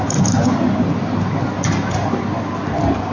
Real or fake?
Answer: real